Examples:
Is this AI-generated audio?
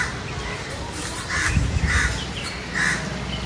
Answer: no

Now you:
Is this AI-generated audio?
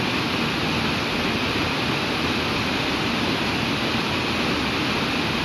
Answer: no